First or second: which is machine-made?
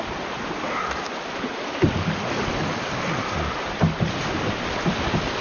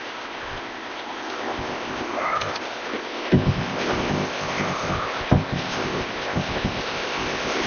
second